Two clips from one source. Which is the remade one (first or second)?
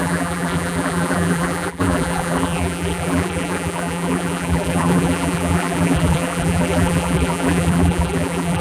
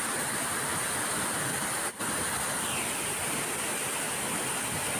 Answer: first